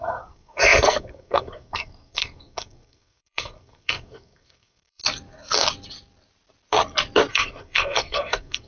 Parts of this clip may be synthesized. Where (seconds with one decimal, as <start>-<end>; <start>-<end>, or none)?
0.0-5.0; 7.3-8.7